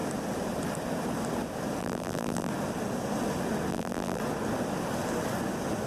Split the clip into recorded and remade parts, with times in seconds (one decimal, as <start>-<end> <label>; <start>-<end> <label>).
0.0-1.8 recorded; 1.8-2.5 remade; 2.5-3.7 recorded; 3.7-4.2 remade; 4.2-5.9 recorded